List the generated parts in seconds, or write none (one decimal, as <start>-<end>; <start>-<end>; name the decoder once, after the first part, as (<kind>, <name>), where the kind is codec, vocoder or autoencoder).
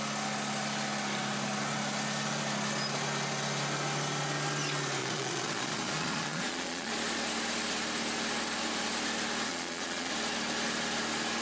5.0-6.9 (vocoder, Vocos); 9.5-10.1